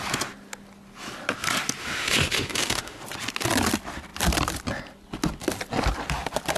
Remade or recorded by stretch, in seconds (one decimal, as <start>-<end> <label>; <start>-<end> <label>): 0.0-1.8 recorded; 1.8-3.0 remade; 3.0-6.6 recorded